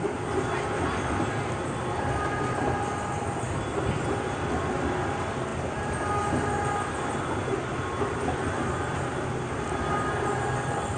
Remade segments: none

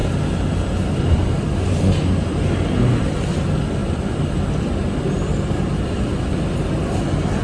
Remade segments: 3.8-4.6